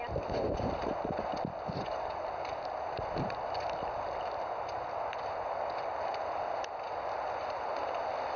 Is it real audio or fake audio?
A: real